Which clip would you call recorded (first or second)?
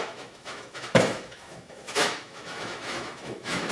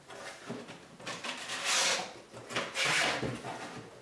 second